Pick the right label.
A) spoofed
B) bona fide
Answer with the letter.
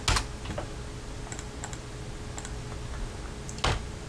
B